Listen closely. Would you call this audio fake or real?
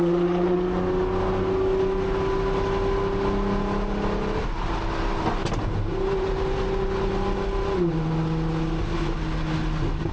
real